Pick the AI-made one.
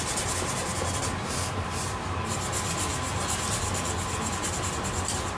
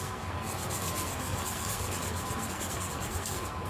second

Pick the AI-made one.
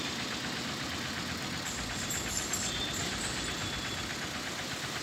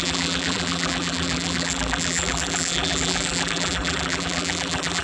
second